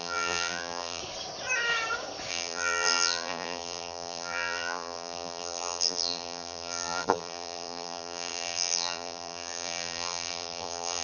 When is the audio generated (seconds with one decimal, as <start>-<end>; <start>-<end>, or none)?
0.0-1.0; 2.3-11.0